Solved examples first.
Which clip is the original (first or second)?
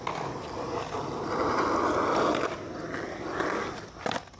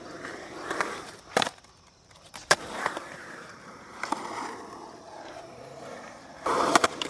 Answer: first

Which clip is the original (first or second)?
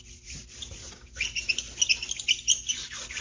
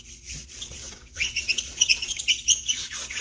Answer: first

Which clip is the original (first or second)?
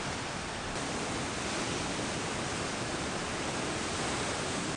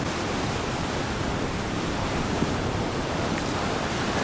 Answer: first